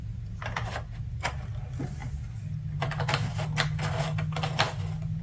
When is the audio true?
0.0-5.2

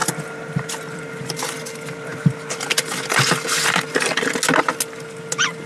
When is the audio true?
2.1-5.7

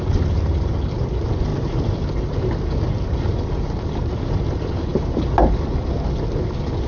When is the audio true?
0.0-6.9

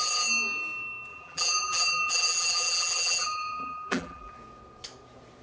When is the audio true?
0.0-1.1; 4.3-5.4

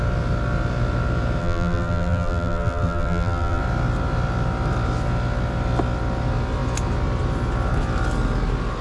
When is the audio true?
0.0-1.4; 3.6-8.8